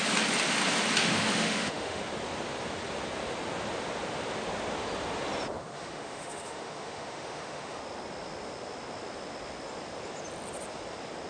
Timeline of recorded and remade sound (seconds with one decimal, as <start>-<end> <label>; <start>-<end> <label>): 0.0-1.0 recorded; 1.0-2.0 remade; 2.0-5.6 recorded; 5.6-7.8 remade; 7.8-11.3 recorded